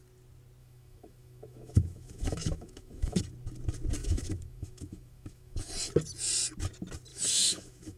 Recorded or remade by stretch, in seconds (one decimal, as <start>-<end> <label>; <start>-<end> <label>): 0.0-0.6 recorded; 0.6-3.2 remade; 3.2-4.0 recorded; 4.0-5.7 remade; 5.7-7.1 recorded; 7.1-8.0 remade